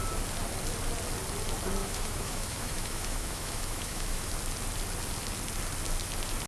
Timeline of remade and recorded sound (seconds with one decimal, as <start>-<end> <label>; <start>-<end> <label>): 0.0-1.8 recorded; 1.8-4.3 remade; 4.3-6.5 recorded